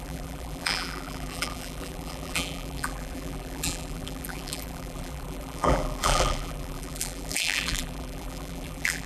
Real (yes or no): no